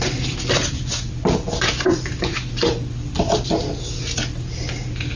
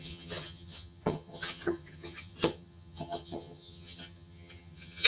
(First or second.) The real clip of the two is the first